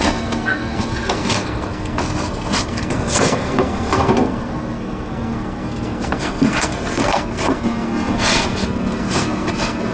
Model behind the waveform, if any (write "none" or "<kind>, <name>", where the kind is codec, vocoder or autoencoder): codec, SNAC